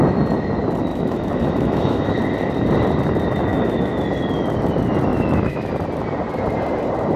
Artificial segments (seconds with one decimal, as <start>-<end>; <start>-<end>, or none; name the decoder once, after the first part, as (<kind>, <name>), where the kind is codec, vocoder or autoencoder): 0.9-2.1 (autoencoder, DAC-VAE); 3.5-4.0; 5.1-5.7